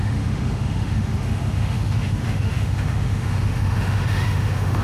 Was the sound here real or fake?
fake